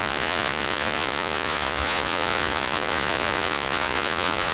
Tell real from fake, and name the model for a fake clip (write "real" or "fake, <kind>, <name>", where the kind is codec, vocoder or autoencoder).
fake, vocoder, Vocos